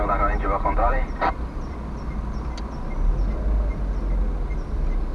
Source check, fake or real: real